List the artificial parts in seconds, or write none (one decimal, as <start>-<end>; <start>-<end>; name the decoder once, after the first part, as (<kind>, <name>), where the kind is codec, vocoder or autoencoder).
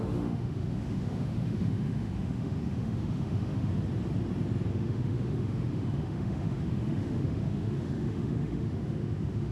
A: 0.0-3.7 (autoencoder, DAC-VAE); 4.7-9.5